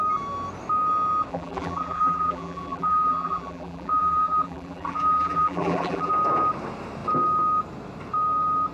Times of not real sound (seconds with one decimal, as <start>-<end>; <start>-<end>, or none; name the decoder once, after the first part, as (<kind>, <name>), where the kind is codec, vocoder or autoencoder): 1.3-6.1 (vocoder, BigVGAN v2)